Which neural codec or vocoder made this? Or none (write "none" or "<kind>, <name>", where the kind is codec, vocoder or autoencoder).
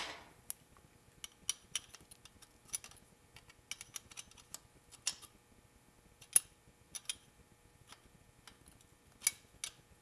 none